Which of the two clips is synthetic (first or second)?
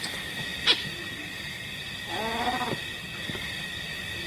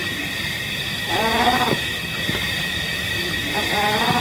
second